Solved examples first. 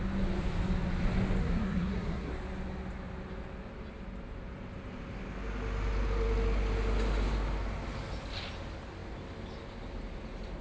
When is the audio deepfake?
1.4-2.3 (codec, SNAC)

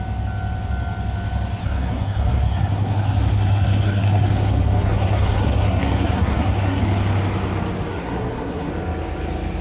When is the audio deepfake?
1.6-6.8 (codec, SNAC); 7.9-8.7

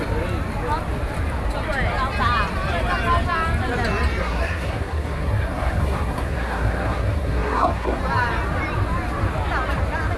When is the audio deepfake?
4.2-8.0 (codec, SNAC)

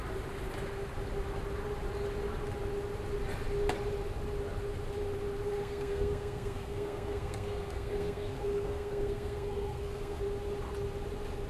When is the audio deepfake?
5.6-10.2 (codec, SNAC)

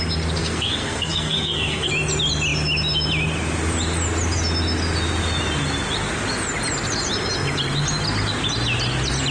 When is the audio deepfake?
0.4-1.9 (codec, SNAC)